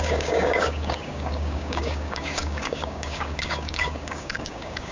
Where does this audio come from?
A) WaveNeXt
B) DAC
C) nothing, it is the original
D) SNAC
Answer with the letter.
B